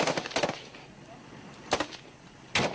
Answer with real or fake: real